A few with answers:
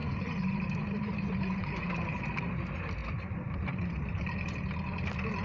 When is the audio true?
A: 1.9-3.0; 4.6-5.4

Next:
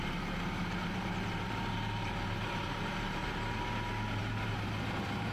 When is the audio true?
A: 3.2-4.2

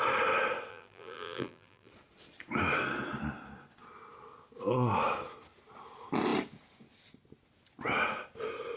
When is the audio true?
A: 0.0-0.7; 1.9-8.8

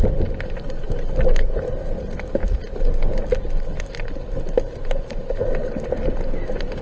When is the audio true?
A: 0.0-6.8